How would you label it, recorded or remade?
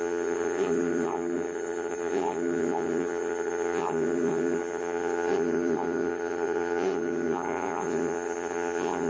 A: remade